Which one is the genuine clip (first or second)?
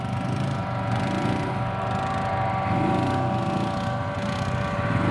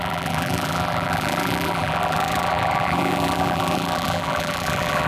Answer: first